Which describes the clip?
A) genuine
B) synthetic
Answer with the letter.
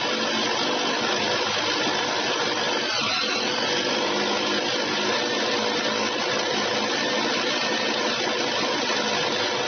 A